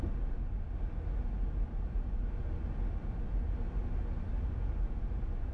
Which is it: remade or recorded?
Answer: recorded